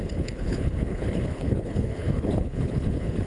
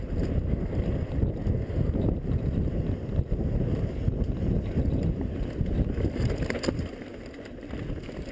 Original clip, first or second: second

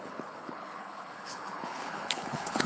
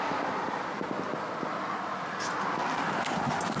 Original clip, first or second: second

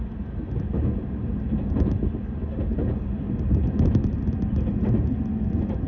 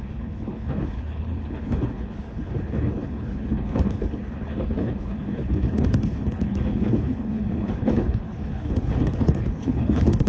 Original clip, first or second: first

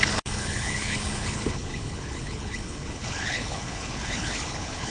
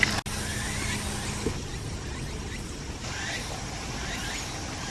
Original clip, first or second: second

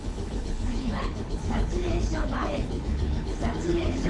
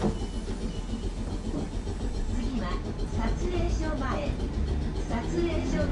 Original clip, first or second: second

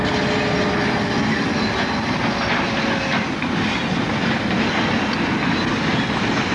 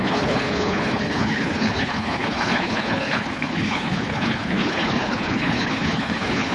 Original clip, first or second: first